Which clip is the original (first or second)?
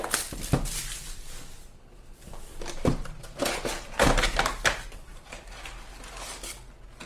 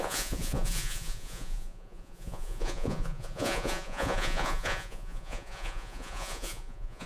first